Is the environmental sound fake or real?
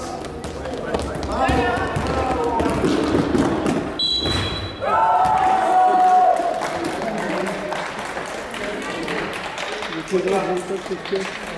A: real